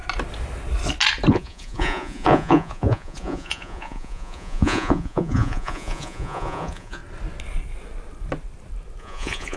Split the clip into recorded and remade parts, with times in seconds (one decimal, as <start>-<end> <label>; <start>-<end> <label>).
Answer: 0.0-1.3 recorded; 1.3-7.0 remade; 7.0-9.0 recorded; 9.0-9.6 remade